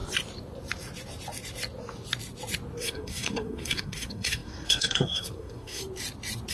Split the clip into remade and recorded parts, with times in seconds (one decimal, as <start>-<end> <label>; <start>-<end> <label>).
0.0-2.8 recorded; 2.8-5.8 remade; 5.8-6.5 recorded